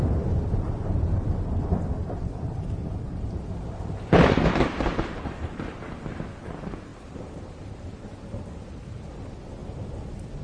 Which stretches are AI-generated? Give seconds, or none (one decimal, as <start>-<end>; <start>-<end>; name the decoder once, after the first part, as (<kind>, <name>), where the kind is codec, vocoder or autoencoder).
2.0-5.7 (vocoder, BigVGAN v2); 6.9-8.4